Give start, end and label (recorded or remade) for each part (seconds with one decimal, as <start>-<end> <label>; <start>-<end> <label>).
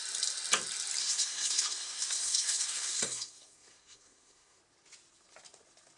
0.0-1.0 recorded; 1.0-4.6 remade; 4.6-6.0 recorded